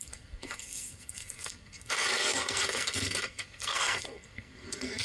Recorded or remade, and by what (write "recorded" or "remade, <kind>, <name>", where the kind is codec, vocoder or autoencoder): remade, codec, SNAC